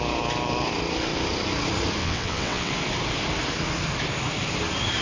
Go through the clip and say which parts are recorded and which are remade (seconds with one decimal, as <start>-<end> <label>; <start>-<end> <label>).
0.0-2.0 recorded; 2.0-2.7 remade; 2.7-5.0 recorded